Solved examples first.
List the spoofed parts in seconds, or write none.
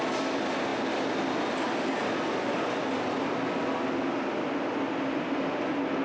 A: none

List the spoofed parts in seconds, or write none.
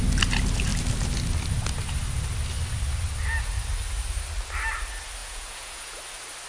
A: 5.2-6.0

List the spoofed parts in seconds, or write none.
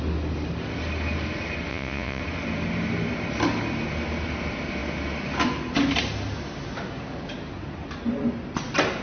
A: 1.7-2.2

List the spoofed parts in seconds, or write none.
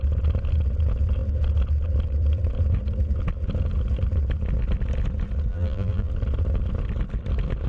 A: 5.5-6.1